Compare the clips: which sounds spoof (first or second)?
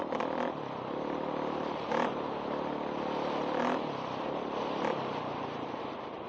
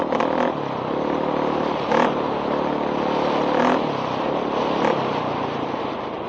first